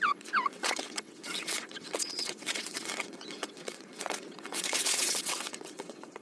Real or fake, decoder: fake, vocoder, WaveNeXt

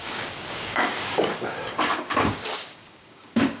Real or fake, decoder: fake, codec, DAC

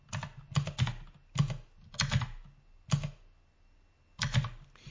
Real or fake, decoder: real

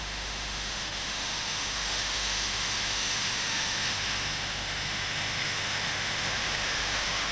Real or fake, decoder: fake, autoencoder, DAC-VAE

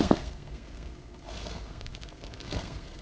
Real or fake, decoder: fake, codec, SNAC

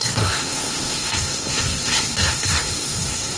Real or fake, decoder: fake, codec, SNAC